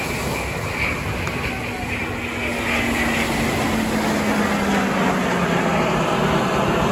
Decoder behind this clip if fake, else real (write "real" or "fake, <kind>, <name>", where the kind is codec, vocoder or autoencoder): real